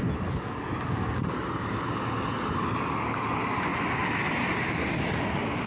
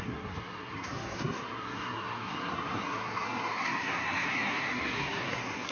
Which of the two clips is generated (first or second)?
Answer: second